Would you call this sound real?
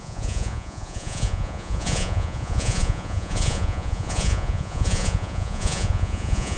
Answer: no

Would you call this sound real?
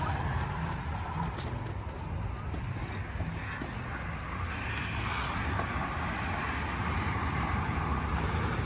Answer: yes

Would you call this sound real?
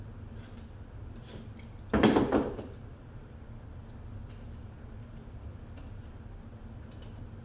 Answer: yes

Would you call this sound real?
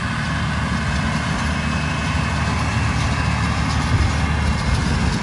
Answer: yes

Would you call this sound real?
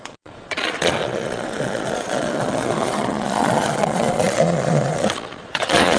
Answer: no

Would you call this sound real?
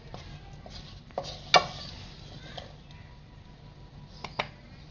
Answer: yes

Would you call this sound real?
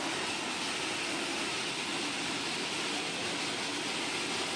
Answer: yes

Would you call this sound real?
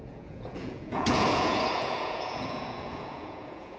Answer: no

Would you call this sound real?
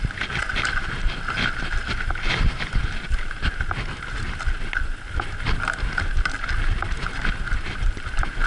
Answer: yes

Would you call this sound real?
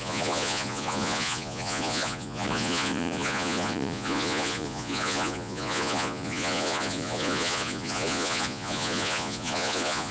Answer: no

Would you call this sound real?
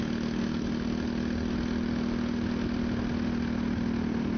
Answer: yes